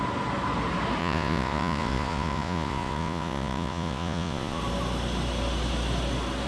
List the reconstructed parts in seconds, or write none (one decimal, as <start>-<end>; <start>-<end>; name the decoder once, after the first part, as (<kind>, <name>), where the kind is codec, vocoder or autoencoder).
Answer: 1.0-4.6 (vocoder, Vocos)